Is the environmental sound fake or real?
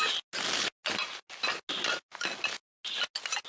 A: real